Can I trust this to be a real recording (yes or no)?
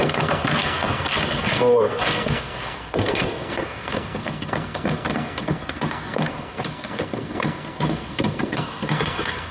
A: no